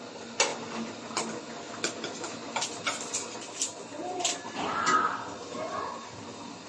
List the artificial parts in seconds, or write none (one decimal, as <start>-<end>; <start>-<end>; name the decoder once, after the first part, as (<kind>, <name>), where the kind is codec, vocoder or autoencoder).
none